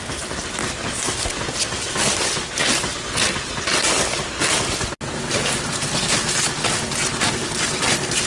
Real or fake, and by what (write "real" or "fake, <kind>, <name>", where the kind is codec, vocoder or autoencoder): real